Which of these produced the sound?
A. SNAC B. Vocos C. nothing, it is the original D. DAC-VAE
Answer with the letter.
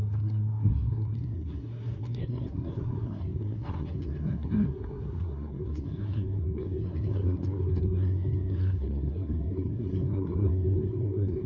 A